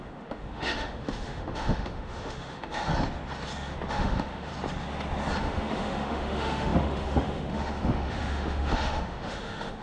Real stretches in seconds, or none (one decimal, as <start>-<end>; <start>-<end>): 2.9-3.9; 4.5-5.4

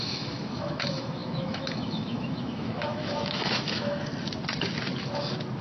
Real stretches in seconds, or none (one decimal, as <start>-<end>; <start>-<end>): 4.1-5.6

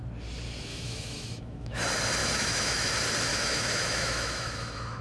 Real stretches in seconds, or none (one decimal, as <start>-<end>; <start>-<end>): 0.0-0.7; 1.8-2.2; 2.9-3.3

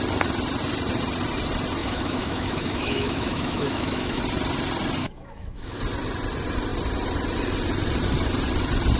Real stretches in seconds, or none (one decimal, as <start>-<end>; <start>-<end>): 0.0-1.8; 4.2-5.0; 5.8-9.0

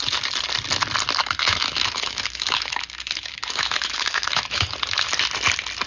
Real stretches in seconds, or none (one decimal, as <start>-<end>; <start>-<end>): 0.0-1.2; 4.7-5.9

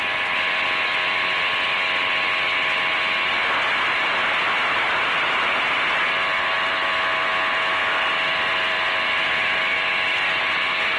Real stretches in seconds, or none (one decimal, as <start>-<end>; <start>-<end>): 0.0-11.0

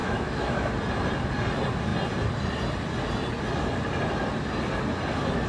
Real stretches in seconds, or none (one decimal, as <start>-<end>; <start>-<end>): 0.7-5.5

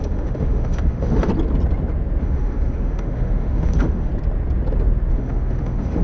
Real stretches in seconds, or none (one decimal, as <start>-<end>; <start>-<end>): 1.3-2.2; 4.1-5.1